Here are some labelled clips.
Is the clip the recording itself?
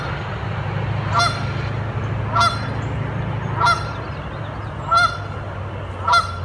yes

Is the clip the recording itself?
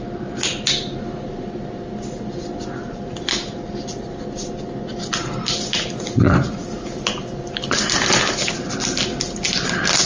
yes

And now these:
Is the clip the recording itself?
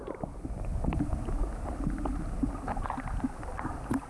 yes